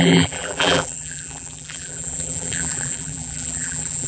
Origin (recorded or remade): remade